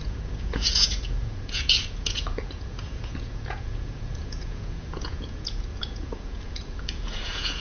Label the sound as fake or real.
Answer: fake